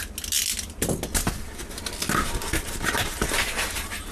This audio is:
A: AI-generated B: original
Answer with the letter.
B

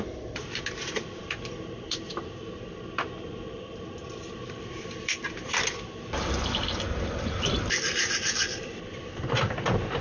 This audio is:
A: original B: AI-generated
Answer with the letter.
B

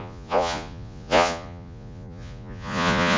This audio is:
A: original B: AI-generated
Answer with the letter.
B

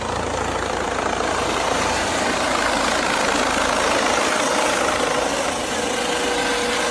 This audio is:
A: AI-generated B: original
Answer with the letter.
B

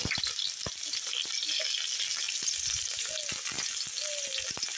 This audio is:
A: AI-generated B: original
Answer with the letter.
B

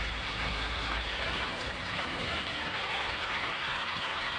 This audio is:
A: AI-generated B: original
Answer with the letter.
A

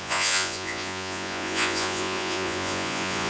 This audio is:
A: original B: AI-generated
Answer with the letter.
B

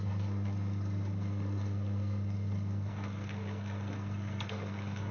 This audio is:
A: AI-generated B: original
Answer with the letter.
A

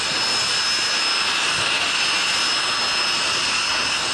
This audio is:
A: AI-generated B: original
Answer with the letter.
B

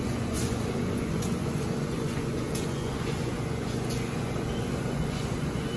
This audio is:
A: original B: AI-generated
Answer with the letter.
B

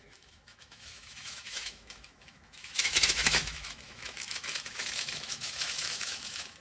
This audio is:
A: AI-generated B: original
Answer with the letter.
A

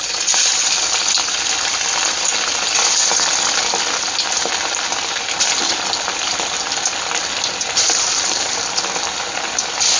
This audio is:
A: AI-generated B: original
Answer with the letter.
B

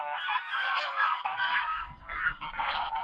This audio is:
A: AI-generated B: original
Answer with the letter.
A